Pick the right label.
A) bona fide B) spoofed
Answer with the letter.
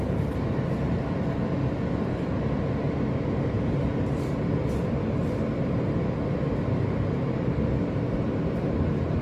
A